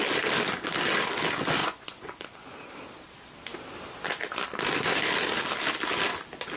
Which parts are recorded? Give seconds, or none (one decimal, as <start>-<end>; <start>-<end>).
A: 0.0-1.6; 2.7-6.6